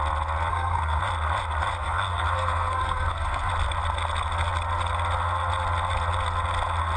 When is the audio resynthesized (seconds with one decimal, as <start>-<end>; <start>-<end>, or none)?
0.5-1.0; 1.8-3.5